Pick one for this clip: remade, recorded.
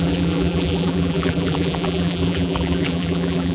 remade